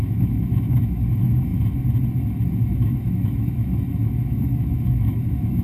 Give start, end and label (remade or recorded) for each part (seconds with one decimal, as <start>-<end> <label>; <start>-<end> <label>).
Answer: 0.0-1.5 remade; 1.5-2.6 recorded; 2.6-5.6 remade